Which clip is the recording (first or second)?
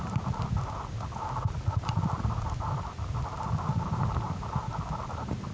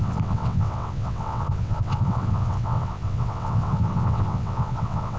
first